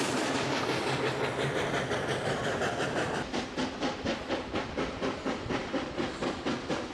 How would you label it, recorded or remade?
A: recorded